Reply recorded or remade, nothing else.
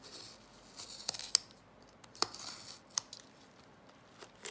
recorded